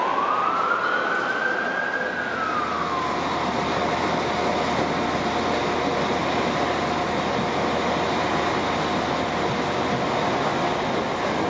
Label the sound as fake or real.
real